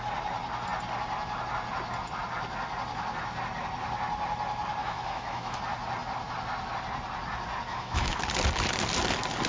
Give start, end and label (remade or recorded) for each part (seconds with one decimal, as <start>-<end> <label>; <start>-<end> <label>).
0.0-4.8 recorded; 4.8-5.6 remade; 5.6-7.7 recorded; 7.7-8.2 remade; 8.2-9.5 recorded